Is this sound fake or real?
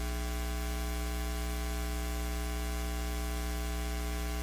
real